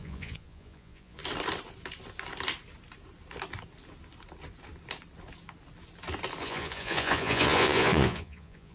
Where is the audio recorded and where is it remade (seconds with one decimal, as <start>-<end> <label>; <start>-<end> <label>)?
0.0-1.2 remade; 1.2-6.4 recorded; 6.4-8.7 remade